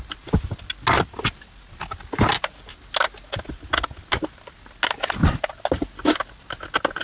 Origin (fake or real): real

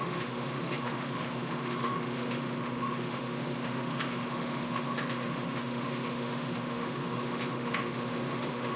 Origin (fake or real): fake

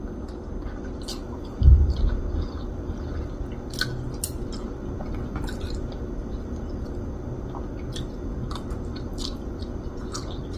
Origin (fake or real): real